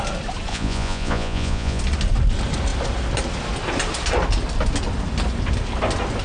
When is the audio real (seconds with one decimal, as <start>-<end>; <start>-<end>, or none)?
0.0-0.5; 1.8-6.2

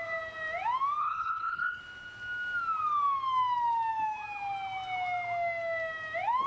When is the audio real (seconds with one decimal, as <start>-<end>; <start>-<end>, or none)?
0.0-1.0; 1.8-6.5

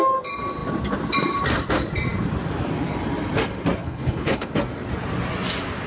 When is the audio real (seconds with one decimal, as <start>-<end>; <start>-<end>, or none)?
0.0-3.8; 4.5-5.9

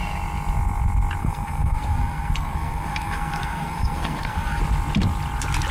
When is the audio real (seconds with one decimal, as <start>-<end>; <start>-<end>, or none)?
0.0-1.2; 4.6-5.7

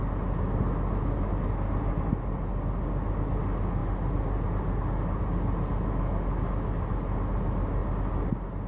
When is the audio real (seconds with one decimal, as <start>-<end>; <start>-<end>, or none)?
0.0-8.7

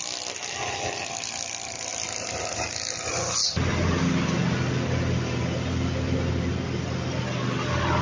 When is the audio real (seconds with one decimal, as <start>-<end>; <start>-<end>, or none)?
0.0-8.0

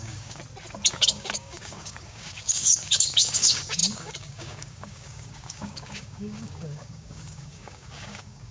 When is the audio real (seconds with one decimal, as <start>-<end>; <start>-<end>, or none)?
0.4-0.9

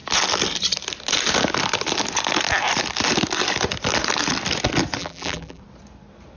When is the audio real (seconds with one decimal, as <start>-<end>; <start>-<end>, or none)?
0.0-5.0; 5.6-6.4